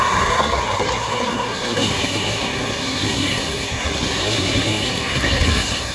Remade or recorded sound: remade